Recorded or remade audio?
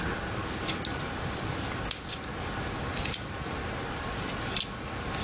recorded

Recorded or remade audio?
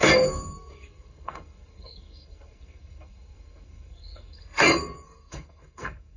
remade